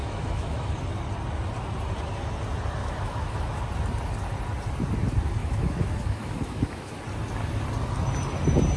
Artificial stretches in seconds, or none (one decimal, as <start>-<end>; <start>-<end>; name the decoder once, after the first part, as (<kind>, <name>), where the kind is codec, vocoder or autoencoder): 0.0-0.7 (autoencoder, DAC-VAE); 2.8-3.6; 5.4-7.0